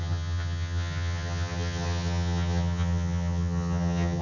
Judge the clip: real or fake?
fake